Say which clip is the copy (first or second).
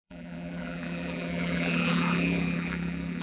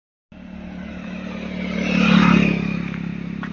first